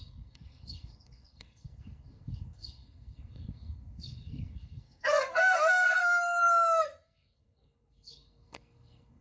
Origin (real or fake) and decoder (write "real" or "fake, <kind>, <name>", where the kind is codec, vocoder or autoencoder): fake, codec, SNAC